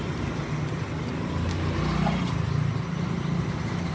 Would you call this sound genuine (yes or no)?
yes